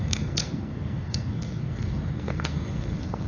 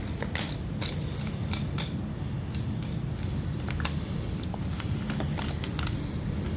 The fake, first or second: first